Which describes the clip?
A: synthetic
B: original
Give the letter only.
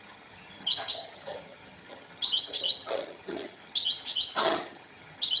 A